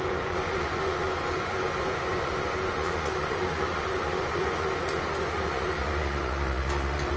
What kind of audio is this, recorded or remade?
remade